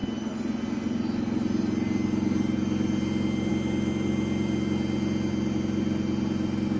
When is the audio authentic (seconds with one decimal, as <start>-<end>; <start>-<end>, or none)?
0.0-6.8